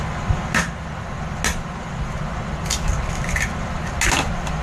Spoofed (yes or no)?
no